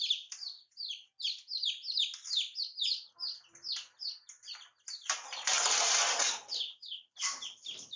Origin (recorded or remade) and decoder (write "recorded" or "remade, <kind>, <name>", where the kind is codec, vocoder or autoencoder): recorded